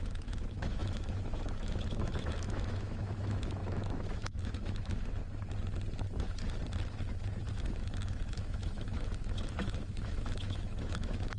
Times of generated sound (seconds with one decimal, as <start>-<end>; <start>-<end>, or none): 0.0-5.2; 7.6-11.4